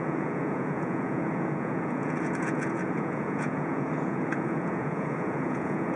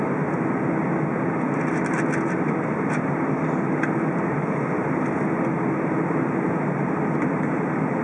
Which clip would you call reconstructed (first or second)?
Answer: first